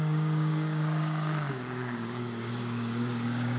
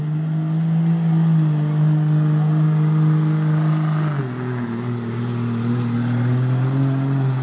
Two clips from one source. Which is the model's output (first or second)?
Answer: first